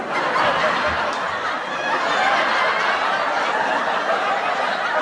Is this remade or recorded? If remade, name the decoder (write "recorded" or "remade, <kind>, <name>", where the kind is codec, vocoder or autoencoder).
recorded